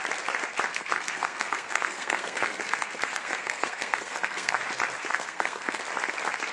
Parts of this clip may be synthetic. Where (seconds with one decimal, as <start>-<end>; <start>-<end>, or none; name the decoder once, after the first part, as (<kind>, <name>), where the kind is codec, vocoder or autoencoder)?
0.7-4.6 (codec, SNAC); 5.1-5.8